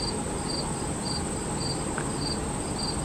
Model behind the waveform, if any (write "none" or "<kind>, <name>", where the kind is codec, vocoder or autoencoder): none